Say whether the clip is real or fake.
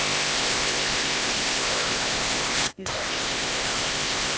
fake